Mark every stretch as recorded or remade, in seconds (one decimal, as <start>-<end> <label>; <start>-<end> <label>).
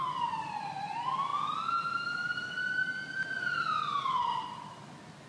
0.0-5.3 recorded